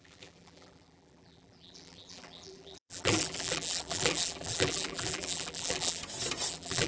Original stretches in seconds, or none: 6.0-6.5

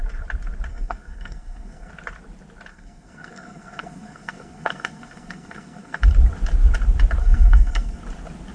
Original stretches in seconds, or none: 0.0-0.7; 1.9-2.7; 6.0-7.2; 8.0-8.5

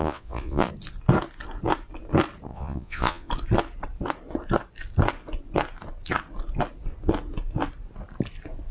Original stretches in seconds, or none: 0.7-2.5; 3.3-8.7